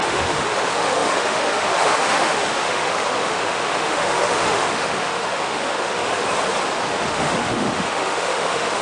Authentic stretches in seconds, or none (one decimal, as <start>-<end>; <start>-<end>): 6.2-6.9